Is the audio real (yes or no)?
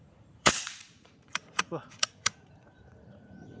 no